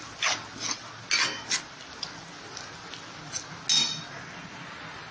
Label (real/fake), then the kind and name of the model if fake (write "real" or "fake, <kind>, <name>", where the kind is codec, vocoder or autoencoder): real